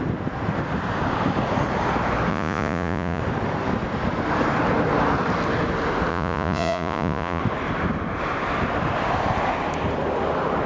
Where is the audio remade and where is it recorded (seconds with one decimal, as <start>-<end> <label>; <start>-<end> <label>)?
0.0-2.3 recorded; 2.3-3.2 remade; 3.2-6.1 recorded; 6.1-7.4 remade; 7.4-10.7 recorded